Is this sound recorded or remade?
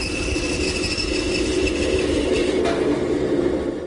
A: recorded